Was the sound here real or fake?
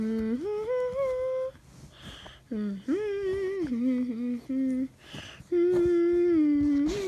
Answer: real